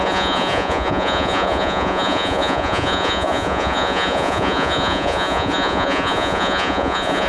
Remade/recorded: remade